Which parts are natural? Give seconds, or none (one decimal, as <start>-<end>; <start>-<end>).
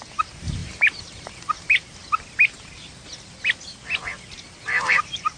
2.0-4.3